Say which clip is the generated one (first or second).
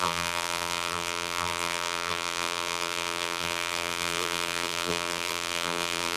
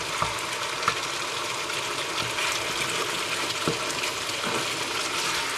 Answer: first